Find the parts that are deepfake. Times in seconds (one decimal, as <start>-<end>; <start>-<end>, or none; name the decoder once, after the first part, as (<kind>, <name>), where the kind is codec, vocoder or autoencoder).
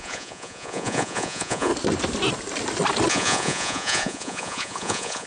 0.0-1.7 (vocoder, Vocos); 3.1-5.3